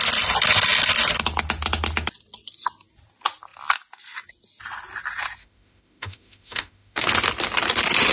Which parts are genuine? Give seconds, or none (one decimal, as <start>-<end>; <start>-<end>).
0.0-5.4; 7.1-8.1